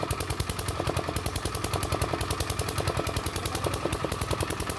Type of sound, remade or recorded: recorded